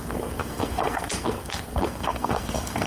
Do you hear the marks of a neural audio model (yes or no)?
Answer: yes